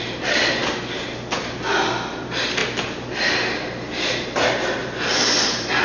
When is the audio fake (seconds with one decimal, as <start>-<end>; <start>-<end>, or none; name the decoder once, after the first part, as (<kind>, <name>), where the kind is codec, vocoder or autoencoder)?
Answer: 4.8-5.8 (vocoder, BigVGAN v2)